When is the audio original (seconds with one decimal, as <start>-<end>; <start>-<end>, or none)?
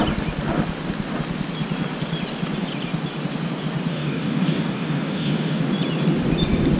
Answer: 0.0-3.9; 5.6-6.8